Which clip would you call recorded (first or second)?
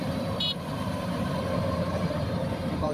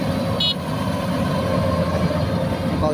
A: second